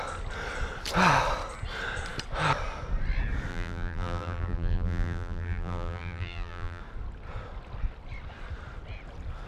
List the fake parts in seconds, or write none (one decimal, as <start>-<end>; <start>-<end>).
3.5-6.8